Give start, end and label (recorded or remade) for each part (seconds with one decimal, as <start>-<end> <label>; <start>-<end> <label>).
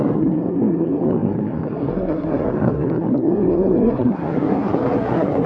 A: 0.0-5.5 remade